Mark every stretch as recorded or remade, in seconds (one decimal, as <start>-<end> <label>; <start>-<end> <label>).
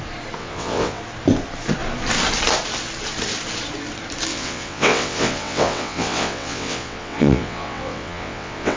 0.0-0.4 recorded; 0.4-1.0 remade; 1.0-4.3 recorded; 4.3-8.8 remade